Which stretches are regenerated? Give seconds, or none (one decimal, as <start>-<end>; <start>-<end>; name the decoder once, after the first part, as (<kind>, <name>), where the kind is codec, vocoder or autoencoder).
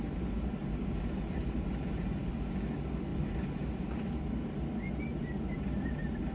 0.6-2.3 (vocoder, BigVGAN v2); 3.1-4.2; 5.1-6.3